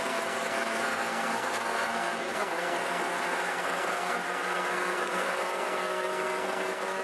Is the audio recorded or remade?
remade